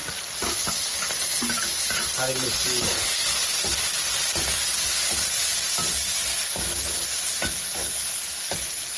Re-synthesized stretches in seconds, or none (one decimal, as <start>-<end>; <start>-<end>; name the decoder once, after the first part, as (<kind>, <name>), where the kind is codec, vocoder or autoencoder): none

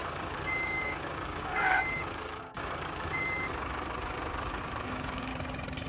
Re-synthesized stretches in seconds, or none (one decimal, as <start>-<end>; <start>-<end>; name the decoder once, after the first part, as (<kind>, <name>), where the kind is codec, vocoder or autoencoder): 0.0-5.3 (codec, DAC)

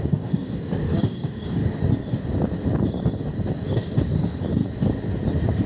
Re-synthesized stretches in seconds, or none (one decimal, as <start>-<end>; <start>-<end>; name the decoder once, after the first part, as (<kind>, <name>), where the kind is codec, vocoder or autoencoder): 0.0-1.6 (codec, DAC); 3.5-4.6

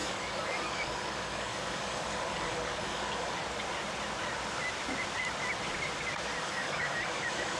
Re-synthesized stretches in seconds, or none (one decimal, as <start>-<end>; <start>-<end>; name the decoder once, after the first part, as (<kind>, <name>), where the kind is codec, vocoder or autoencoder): 0.0-3.4 (codec, DAC); 6.4-7.6

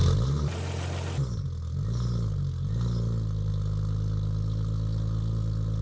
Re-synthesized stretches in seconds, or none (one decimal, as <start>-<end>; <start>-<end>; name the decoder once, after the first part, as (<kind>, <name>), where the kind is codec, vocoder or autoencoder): none

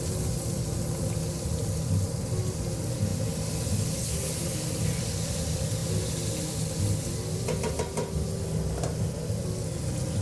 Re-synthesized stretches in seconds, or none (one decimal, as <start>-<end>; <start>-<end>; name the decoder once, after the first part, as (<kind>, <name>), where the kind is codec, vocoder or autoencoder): none